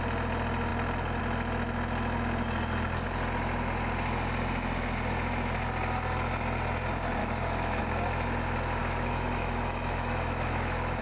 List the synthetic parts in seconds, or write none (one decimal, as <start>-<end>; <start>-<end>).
7.2-7.8; 8.8-11.0